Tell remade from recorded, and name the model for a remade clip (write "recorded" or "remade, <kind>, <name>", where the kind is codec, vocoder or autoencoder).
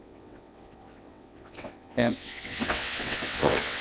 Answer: remade, vocoder, WaveNeXt